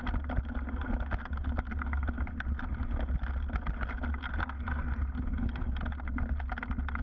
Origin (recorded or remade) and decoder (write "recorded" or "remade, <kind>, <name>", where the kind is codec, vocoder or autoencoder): recorded